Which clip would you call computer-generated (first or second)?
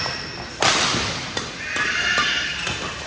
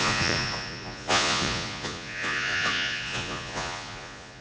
second